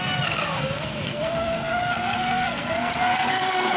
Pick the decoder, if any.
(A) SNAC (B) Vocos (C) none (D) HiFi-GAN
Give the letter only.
A